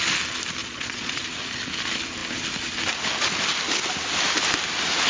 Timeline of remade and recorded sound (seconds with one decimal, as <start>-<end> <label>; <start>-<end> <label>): 0.0-0.6 recorded; 0.6-1.2 remade; 1.2-5.1 recorded